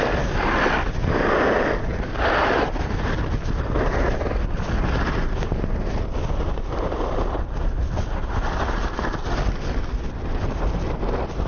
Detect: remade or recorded recorded